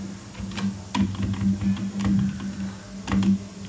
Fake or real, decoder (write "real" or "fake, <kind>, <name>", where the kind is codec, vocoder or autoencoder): real